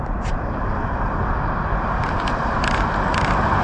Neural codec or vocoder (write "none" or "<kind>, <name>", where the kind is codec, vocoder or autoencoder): none